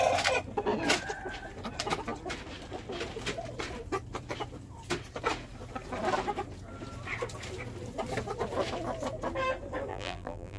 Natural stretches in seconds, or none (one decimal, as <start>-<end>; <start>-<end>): 0.0-9.9